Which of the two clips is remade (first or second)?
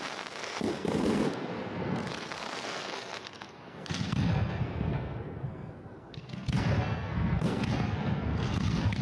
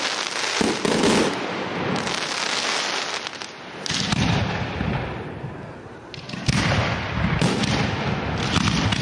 first